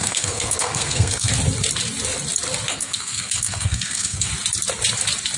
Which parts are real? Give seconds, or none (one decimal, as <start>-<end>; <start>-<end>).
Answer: 1.3-2.7; 4.3-5.4